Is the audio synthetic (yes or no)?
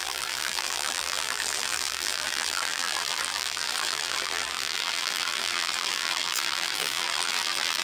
yes